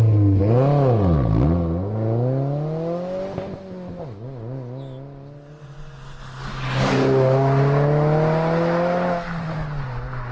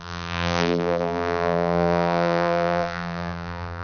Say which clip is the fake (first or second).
second